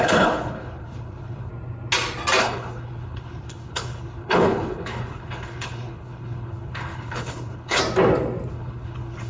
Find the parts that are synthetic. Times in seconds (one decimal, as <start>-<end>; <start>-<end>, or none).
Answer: 0.0-1.5; 2.4-7.8; 8.5-9.3